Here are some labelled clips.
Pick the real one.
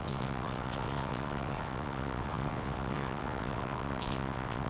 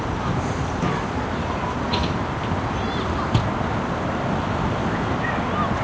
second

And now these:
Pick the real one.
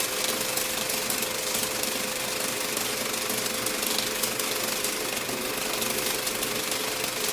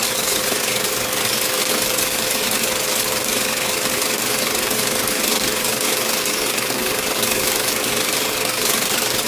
first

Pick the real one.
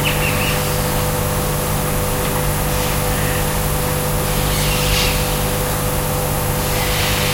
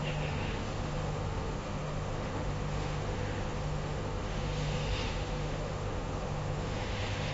first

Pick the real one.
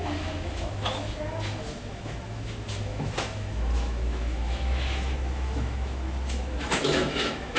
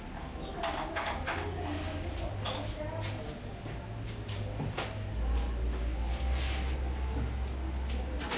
second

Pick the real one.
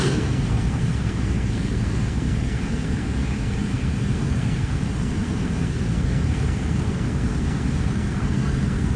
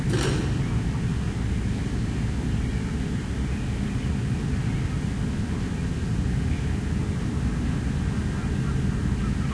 second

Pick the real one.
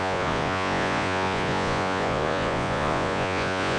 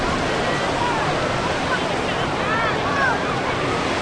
second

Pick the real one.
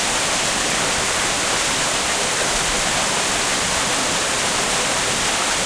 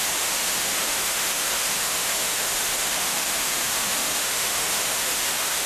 first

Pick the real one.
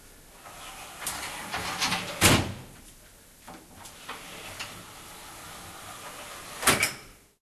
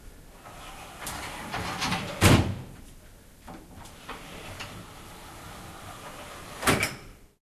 first